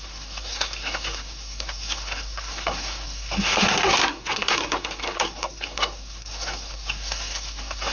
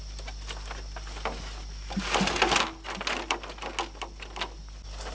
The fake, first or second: first